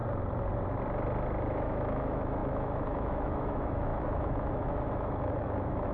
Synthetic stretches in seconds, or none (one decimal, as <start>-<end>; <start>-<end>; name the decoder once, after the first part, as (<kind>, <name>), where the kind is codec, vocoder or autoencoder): 1.5-5.9 (autoencoder, DAC-VAE)